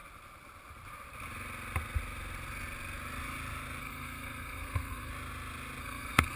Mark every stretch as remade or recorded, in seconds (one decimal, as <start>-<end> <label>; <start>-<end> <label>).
0.0-3.8 recorded; 3.8-5.1 remade; 5.1-5.8 recorded; 5.8-6.4 remade